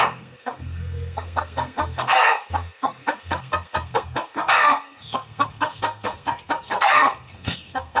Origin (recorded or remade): remade